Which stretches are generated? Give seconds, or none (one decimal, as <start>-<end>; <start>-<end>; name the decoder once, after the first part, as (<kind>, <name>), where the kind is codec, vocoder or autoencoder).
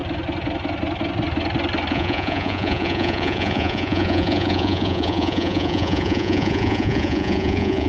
1.9-7.9 (vocoder, Vocos)